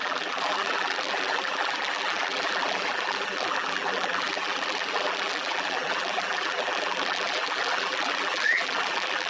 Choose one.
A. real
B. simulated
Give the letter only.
B